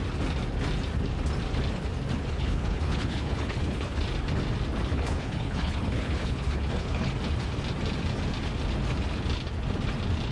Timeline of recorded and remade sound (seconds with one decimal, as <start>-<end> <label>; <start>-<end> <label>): 0.0-2.2 recorded; 2.2-4.0 remade; 4.0-4.9 recorded; 4.9-7.1 remade; 7.1-10.3 recorded